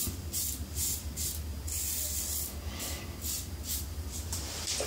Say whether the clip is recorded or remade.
recorded